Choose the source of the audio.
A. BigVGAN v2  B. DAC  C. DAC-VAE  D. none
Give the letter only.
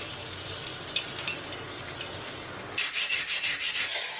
D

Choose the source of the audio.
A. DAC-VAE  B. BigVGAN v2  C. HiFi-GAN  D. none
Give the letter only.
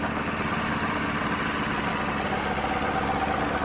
D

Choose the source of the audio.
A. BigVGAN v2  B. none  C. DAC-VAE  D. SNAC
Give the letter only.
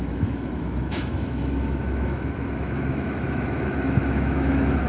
C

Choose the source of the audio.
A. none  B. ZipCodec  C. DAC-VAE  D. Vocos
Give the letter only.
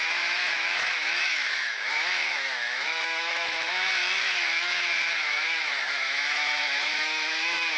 C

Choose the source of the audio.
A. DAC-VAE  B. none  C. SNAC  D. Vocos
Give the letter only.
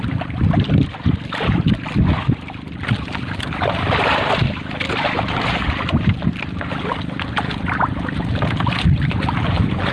B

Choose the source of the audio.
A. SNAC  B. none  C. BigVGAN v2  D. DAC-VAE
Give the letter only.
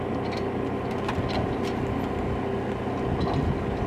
B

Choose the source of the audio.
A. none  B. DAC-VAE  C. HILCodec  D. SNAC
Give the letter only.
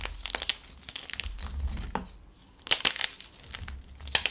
A